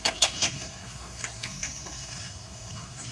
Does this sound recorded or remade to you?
remade